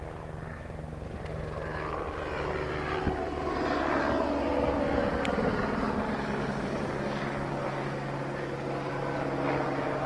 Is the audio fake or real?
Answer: real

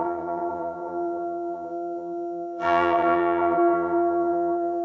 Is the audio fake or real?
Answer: fake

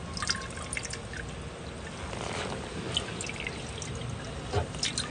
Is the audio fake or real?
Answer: real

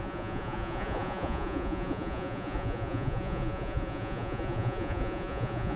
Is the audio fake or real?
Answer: fake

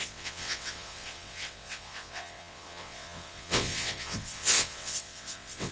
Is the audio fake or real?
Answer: fake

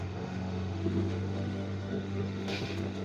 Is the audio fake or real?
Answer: fake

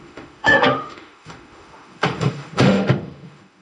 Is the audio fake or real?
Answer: fake